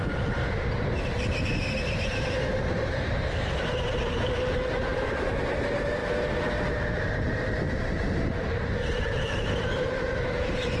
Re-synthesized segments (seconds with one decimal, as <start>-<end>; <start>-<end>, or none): 1.7-6.0; 6.5-10.8